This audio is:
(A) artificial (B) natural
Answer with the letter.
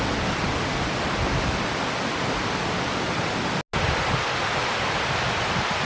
B